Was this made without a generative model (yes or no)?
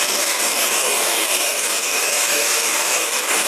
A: no